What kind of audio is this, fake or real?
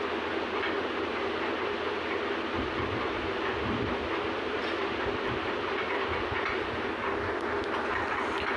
real